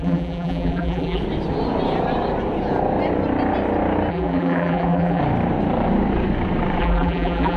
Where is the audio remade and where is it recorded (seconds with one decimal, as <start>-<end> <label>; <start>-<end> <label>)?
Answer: 0.0-1.2 remade; 1.2-4.1 recorded; 4.1-5.2 remade; 5.2-6.8 recorded; 6.8-7.6 remade